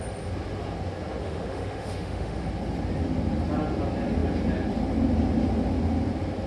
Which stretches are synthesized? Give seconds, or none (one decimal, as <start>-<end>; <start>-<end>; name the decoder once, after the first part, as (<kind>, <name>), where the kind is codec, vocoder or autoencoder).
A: 1.2-2.5 (autoencoder, DAC-VAE)